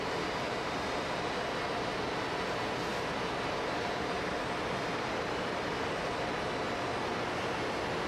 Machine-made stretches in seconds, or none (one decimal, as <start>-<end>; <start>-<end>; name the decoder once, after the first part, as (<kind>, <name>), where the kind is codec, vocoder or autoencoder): 0.6-1.2 (vocoder, BigVGAN v2); 2.9-5.9